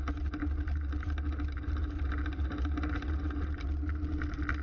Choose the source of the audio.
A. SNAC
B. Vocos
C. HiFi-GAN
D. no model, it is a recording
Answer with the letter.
D